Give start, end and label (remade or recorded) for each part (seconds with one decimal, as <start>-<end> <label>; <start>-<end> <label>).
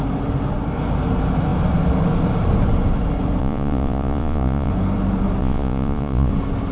0.0-3.4 recorded; 3.4-4.7 remade; 4.7-5.4 recorded; 5.4-6.3 remade; 6.3-6.7 recorded